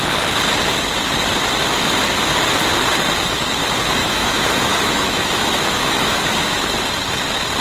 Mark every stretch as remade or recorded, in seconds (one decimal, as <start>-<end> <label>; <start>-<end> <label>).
0.0-4.0 recorded; 4.0-6.6 remade; 6.6-7.6 recorded